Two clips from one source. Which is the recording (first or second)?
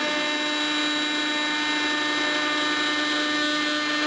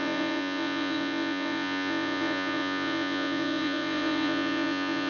first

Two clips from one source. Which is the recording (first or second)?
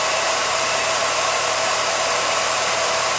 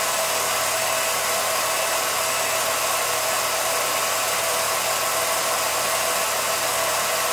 second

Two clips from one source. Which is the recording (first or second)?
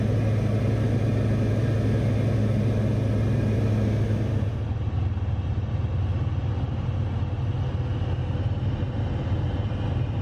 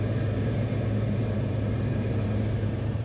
first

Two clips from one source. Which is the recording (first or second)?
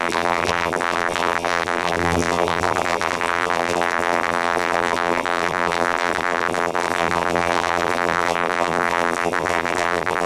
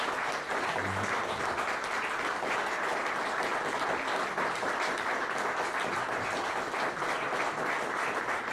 second